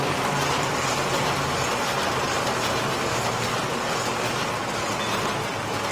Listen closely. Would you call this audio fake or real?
real